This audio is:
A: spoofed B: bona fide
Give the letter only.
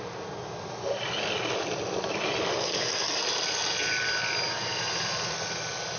B